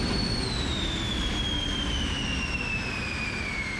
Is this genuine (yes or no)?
yes